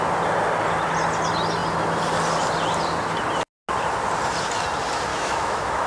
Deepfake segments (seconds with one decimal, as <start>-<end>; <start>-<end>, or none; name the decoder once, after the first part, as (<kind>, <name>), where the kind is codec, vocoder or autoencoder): 5.1-5.9 (autoencoder, DAC-VAE)